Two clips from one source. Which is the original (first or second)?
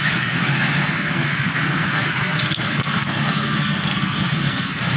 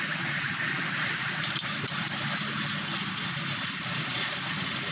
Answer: second